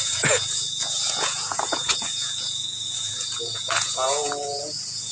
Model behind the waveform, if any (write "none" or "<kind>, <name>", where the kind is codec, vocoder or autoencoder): vocoder, Vocos